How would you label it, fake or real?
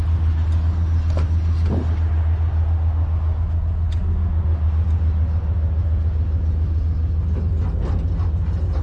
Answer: real